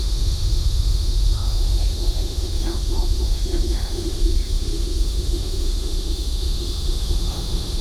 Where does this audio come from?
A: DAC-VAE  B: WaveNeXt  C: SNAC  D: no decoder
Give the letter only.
A